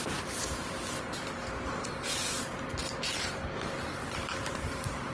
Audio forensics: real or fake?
real